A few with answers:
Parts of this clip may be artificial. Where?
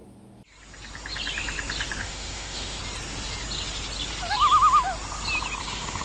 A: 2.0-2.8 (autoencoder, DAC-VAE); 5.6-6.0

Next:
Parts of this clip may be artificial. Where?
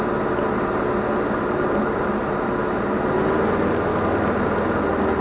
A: none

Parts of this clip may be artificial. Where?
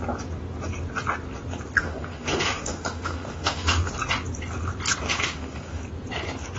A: 1.8-3.9 (autoencoder, DAC-VAE); 5.1-5.8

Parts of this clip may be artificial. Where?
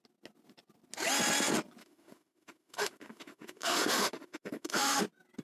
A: 1.8-5.0 (autoencoder, DAC-VAE)